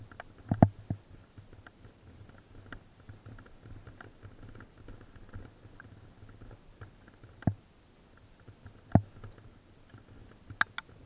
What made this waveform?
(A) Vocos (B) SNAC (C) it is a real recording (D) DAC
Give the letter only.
C